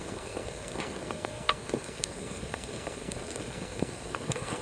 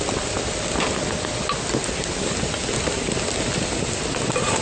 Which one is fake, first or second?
first